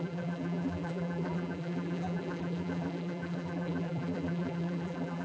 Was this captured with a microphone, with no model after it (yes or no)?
no